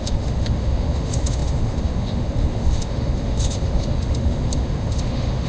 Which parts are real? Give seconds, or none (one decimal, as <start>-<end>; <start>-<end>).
none